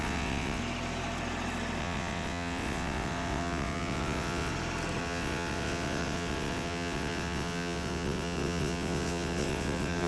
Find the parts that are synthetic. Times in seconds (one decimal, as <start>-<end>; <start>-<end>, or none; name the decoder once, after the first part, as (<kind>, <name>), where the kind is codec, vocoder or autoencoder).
0.0-0.6 (vocoder, WaveNeXt); 1.8-4.5; 5.0-10.1